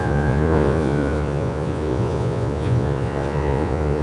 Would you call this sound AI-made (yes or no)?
yes